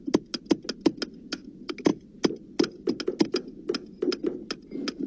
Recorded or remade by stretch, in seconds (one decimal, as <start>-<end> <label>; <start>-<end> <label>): 0.0-5.1 recorded